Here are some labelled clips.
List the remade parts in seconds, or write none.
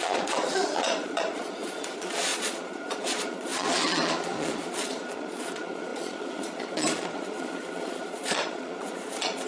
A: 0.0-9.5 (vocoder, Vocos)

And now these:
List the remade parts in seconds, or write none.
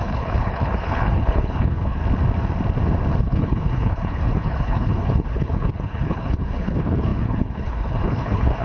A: 0.0-2.0 (codec, HILCodec); 3.2-8.6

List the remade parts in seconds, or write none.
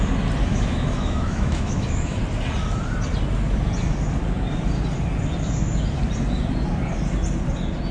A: 0.5-2.2 (autoencoder, DAC-VAE)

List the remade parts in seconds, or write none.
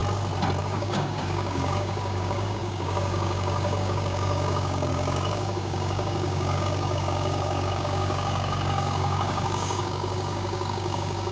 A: 0.6-11.3 (codec, DAC)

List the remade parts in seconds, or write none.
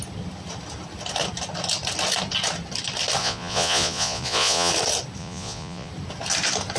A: 3.2-4.7 (vocoder, Vocos); 5.2-5.9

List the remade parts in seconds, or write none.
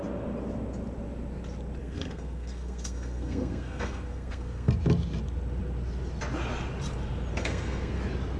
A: 1.8-4.7 (codec, SNAC); 7.3-8.0